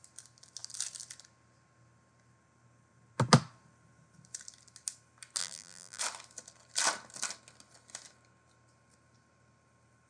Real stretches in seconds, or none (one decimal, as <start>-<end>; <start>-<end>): 0.0-5.4; 6.0-10.1